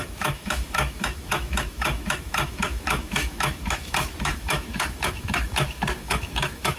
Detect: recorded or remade remade